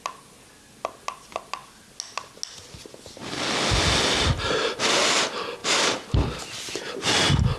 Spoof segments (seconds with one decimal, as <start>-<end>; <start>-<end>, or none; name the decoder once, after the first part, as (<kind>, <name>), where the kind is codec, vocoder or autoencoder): 5.6-6.4 (vocoder, BigVGAN v2)